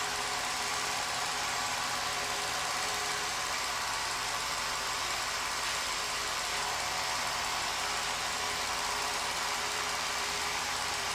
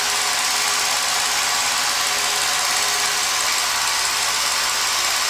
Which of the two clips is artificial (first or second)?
first